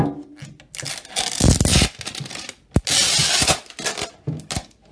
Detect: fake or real real